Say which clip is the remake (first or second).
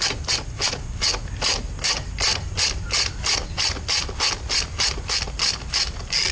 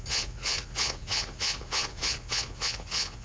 second